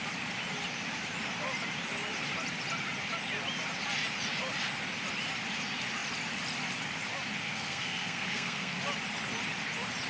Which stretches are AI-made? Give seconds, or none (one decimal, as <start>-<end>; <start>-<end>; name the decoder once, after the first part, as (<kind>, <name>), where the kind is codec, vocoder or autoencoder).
7.4-8.8 (codec, SNAC)